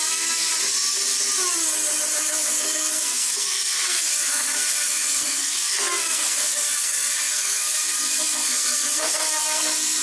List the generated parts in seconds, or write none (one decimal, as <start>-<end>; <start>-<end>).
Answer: 0.0-0.5; 2.2-10.0